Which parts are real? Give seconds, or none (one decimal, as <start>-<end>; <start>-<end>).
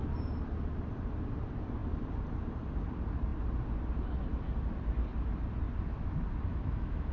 0.0-6.5